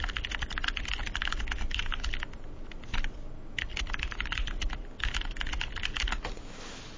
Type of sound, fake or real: real